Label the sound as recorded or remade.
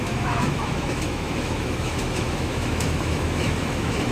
remade